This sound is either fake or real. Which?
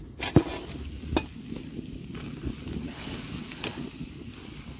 real